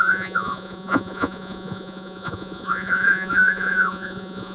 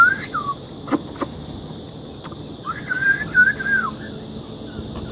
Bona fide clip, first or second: second